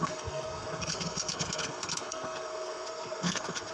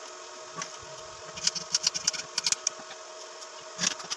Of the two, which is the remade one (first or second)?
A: first